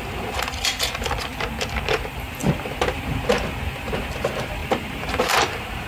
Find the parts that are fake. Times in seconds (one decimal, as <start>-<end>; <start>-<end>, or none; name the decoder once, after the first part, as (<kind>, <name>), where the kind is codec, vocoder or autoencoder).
0.0-1.3 (vocoder, BigVGAN v2); 1.9-5.9

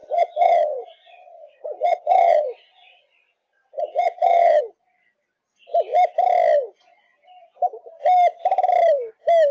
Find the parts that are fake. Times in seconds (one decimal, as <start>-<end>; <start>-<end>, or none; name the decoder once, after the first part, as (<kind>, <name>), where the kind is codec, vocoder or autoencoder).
0.0-4.6 (vocoder, WaveNeXt)

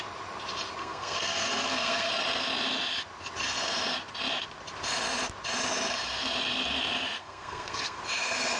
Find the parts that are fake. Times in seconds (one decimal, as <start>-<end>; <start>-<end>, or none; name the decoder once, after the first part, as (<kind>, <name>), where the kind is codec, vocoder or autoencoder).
0.8-2.1 (codec, SNAC); 7.2-8.0